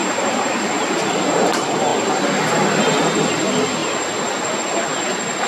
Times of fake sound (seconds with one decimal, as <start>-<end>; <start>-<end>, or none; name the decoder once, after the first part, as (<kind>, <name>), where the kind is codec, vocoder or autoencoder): 0.0-0.5 (vocoder, BigVGAN v2)